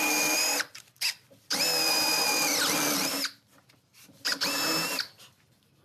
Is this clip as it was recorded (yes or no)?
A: no